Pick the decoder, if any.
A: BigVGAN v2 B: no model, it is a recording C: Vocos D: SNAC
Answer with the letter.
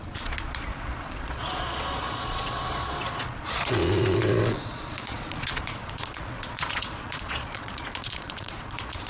C